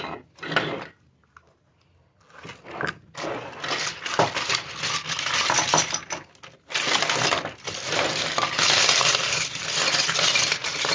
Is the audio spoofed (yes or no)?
no